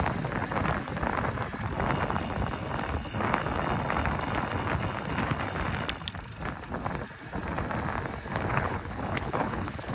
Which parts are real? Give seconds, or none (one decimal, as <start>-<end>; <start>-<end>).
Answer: 0.0-8.5